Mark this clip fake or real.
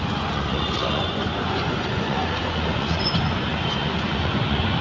fake